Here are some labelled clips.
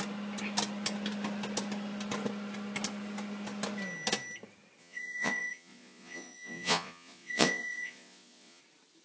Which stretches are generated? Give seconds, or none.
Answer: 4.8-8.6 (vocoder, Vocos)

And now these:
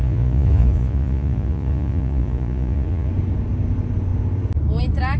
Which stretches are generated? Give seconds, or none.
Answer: 0.0-3.1 (vocoder, Vocos)

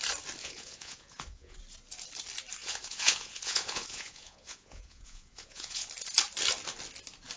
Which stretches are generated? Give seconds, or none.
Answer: 0.4-1.6 (vocoder, Vocos); 2.6-5.9